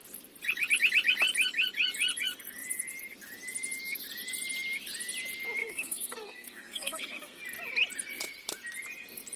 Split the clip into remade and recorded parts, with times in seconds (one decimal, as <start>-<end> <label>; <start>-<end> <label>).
0.0-5.6 recorded; 5.6-7.4 remade; 7.4-9.4 recorded